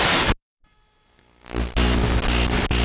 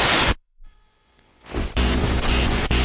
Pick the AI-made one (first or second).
second